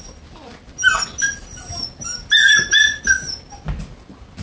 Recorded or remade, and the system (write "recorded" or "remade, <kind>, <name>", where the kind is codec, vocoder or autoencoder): recorded